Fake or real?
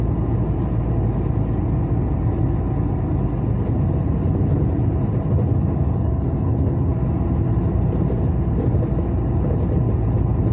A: real